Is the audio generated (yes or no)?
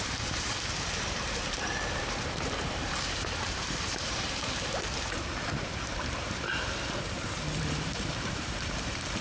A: yes